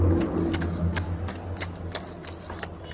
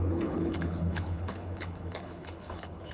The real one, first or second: first